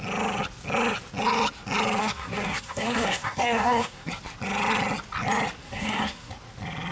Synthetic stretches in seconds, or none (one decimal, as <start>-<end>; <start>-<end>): 2.0-4.1; 5.6-6.3